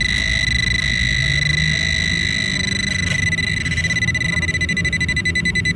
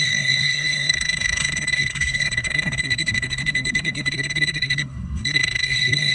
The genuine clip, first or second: first